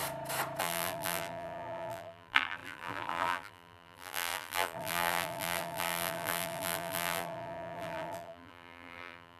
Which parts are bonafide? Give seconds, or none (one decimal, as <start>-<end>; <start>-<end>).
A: 0.0-0.6